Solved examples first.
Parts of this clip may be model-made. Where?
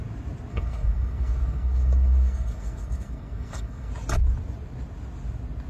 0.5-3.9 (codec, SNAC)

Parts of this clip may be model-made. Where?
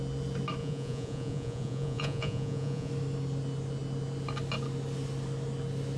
0.6-2.9 (vocoder, Vocos)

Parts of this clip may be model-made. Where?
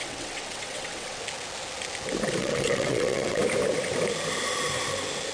0.0-1.2 (vocoder, WaveNeXt); 2.4-3.4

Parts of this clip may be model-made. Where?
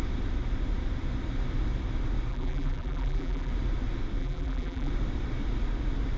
2.3-3.5 (vocoder, BigVGAN v2); 4.2-4.9